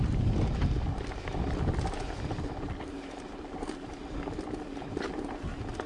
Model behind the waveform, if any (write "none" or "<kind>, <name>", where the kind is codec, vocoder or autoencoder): none